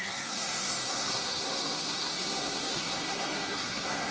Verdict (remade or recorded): remade